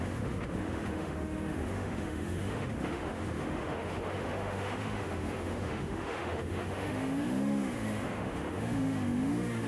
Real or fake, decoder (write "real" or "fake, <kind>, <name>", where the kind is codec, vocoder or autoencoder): fake, autoencoder, DAC-VAE